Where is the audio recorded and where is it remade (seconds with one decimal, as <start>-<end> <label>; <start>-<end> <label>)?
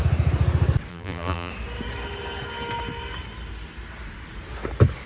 0.0-0.9 recorded; 0.9-1.5 remade; 1.5-5.1 recorded